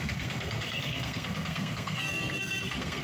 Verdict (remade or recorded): remade